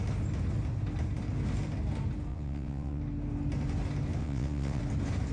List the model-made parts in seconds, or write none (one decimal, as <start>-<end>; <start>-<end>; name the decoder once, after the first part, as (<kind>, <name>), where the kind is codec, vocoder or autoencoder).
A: 2.3-3.0 (vocoder, WaveNeXt); 4.2-4.8